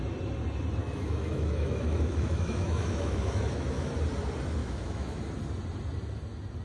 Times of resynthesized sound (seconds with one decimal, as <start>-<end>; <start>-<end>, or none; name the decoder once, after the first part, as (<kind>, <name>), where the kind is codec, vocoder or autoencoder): 0.8-3.9 (autoencoder, DAC-VAE); 4.6-5.2